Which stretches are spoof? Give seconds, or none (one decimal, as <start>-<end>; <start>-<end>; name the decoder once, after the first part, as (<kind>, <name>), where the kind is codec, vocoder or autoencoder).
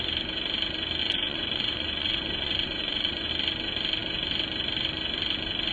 1.0-3.3 (vocoder, Vocos)